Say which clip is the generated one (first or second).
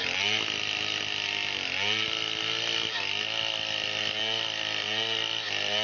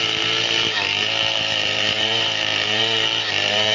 second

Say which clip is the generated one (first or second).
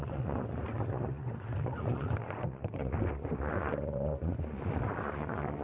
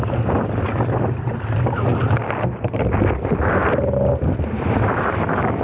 first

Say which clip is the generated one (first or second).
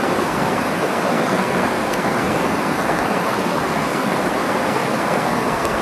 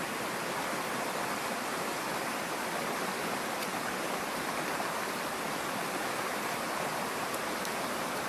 first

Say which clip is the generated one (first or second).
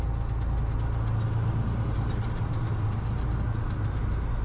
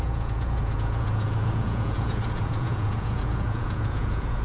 second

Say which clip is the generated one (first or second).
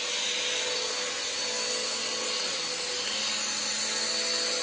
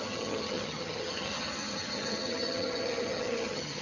second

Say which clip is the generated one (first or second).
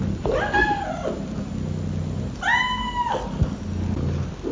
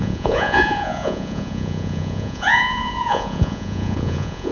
second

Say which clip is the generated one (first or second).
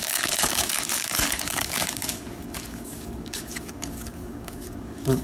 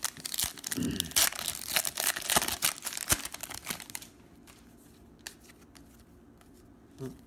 first